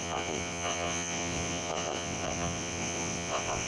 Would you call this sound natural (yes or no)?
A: no